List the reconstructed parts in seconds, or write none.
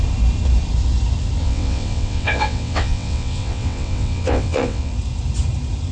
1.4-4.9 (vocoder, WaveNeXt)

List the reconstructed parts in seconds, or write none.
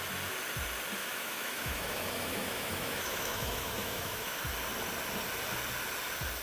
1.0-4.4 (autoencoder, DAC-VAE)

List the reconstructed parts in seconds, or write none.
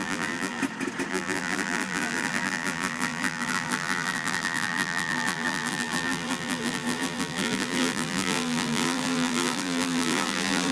0.0-0.6 (vocoder, BigVGAN v2); 1.1-10.7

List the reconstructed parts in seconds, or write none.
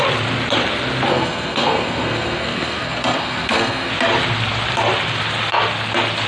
1.1-3.9 (codec, SNAC)